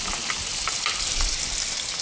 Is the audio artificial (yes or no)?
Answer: no